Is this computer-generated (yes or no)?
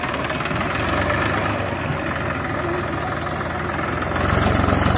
no